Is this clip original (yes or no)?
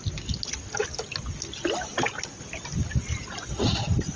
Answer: yes